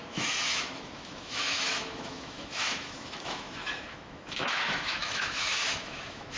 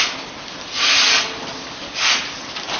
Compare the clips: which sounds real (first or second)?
second